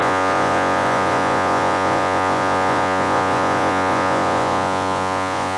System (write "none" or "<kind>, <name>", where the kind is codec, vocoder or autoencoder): vocoder, Vocos